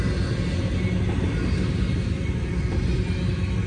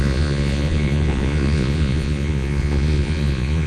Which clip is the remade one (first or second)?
second